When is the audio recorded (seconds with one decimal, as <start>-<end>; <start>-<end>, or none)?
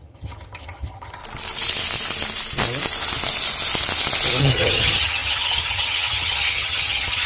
1.2-4.4